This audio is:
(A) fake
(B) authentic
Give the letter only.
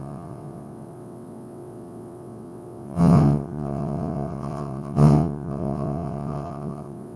A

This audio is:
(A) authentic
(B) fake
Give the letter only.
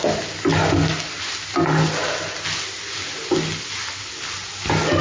A